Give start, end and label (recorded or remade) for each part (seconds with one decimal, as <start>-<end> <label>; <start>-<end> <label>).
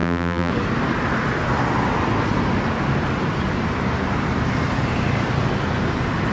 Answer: 0.0-0.5 remade; 0.5-6.3 recorded